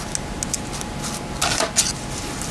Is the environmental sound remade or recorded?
recorded